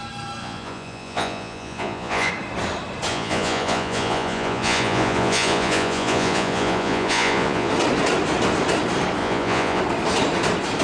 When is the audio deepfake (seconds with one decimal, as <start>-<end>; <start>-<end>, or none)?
0.4-2.3; 3.1-7.7; 9.2-9.8